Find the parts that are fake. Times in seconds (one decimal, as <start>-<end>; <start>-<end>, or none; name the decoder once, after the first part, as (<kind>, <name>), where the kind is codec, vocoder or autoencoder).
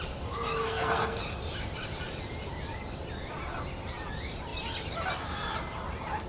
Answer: 0.6-1.2 (codec, SNAC)